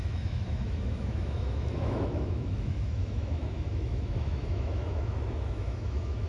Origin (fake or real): fake